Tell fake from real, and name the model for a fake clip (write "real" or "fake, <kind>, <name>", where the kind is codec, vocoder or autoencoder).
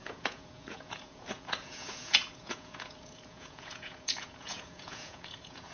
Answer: fake, vocoder, Vocos